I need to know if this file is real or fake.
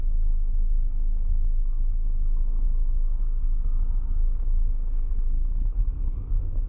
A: fake